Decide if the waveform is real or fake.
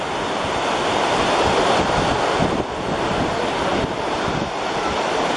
real